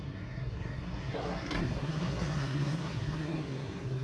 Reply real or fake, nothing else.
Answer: fake